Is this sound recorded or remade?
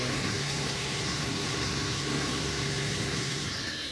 remade